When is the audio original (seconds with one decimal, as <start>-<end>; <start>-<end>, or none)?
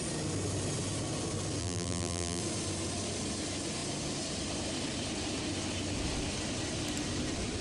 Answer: 0.0-1.6; 2.4-7.6